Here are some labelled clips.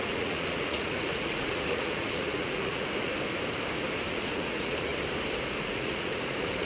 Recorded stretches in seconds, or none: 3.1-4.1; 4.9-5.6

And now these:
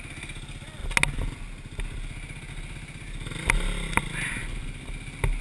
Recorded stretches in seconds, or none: 0.0-5.4

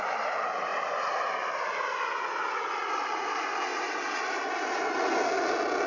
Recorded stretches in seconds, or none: 0.0-5.9

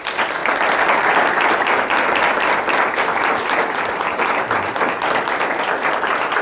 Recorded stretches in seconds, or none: 0.0-6.4